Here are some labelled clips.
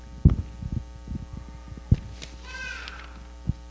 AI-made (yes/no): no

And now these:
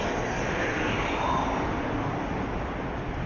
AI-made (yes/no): no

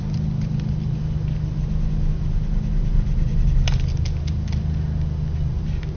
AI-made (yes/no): no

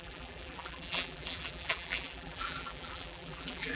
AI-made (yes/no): yes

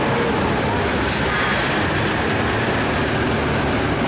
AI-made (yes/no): no